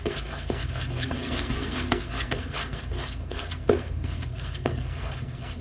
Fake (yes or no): yes